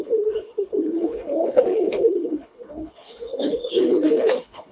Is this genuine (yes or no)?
no